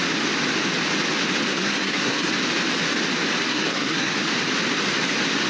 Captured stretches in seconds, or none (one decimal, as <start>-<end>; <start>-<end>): 0.0-1.5; 2.3-3.5; 4.1-5.5